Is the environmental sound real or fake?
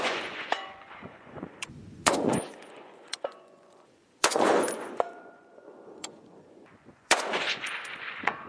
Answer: fake